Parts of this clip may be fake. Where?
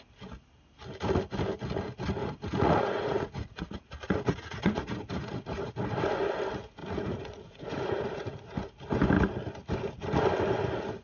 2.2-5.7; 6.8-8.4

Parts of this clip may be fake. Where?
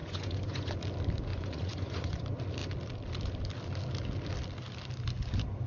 0.0-0.7; 1.3-2.2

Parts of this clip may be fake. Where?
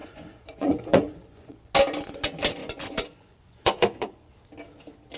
0.0-1.7; 2.6-4.3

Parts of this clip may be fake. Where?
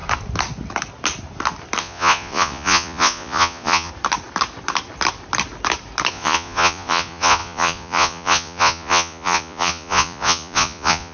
1.8-3.9; 6.1-11.1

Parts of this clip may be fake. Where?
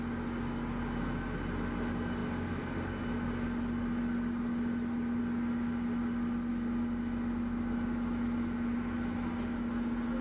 none